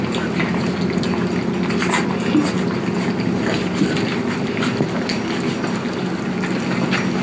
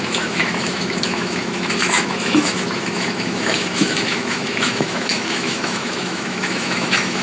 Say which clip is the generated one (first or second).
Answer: second